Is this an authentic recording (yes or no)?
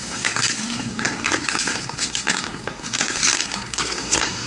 no